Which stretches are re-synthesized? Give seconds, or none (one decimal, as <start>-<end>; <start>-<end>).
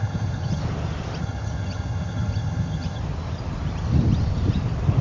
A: 0.0-0.6; 1.2-3.0